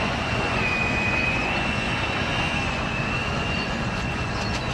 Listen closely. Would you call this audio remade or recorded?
remade